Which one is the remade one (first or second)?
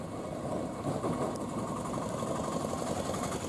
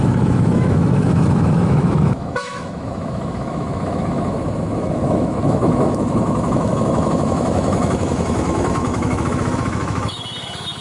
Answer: second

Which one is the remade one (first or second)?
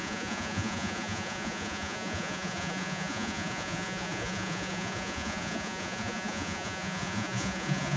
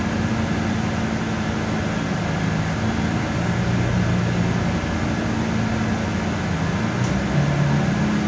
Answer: first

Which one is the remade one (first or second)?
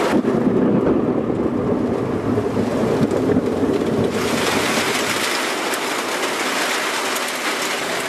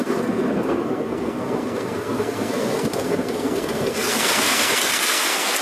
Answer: second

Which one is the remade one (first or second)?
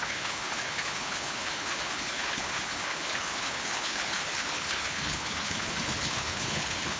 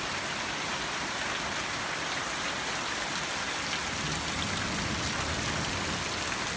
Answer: first